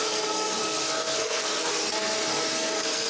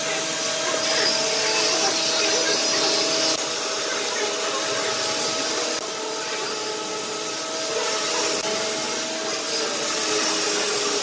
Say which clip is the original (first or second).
second